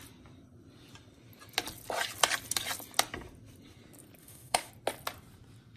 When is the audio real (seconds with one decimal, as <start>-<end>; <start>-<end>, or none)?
0.0-4.2; 4.7-5.8